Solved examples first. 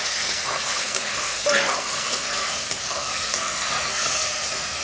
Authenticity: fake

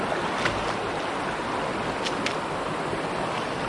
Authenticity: real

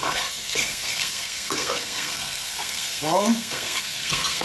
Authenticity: fake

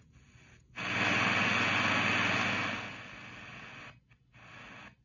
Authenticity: real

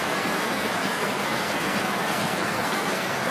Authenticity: fake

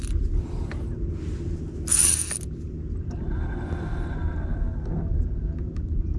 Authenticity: real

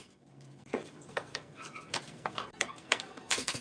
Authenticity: fake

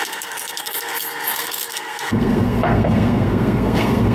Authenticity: fake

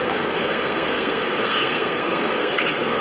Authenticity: fake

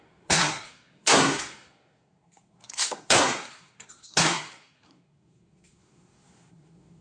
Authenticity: fake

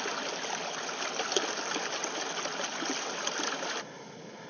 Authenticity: real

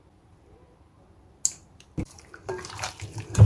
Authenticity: real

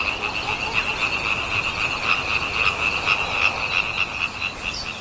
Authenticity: real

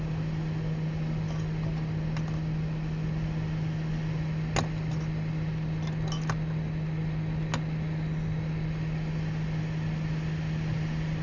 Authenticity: real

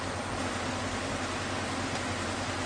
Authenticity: real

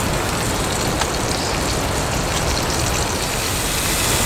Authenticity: real